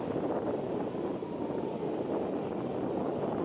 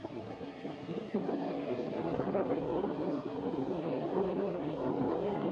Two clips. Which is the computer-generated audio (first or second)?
second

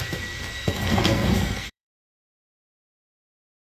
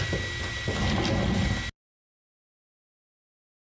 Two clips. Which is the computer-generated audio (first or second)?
first